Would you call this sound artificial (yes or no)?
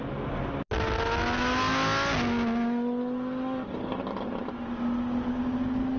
no